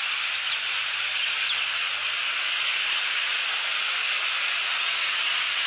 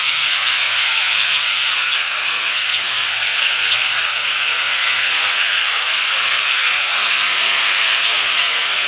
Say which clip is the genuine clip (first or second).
first